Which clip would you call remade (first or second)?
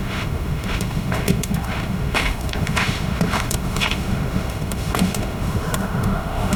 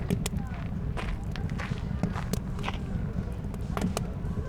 first